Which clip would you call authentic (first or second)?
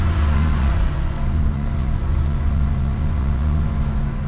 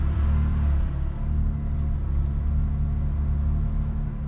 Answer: second